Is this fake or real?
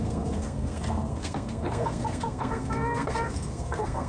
fake